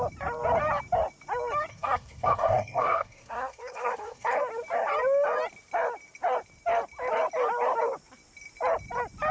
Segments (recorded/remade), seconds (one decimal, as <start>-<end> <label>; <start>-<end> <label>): 0.0-1.7 recorded; 1.7-4.4 remade; 4.4-9.3 recorded